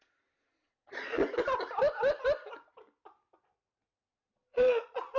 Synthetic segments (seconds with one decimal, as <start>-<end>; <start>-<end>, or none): 0.0-1.2; 4.1-5.2